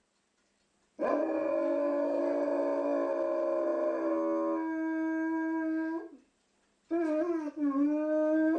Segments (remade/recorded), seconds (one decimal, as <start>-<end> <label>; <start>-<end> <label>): 0.0-1.1 recorded; 1.1-2.2 remade; 2.2-8.6 recorded